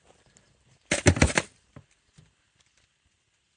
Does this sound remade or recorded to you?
recorded